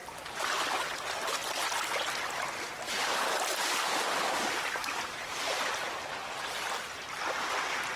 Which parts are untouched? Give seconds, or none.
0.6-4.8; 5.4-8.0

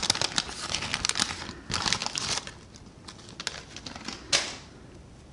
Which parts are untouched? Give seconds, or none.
0.0-5.3